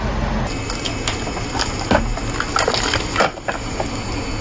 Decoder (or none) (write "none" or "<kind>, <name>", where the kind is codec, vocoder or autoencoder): none